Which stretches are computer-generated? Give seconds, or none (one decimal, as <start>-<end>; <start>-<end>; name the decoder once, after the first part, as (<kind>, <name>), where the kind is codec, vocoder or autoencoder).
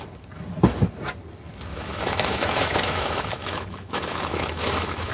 1.7-5.1 (autoencoder, DAC-VAE)